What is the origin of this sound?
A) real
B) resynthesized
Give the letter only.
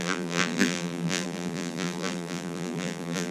B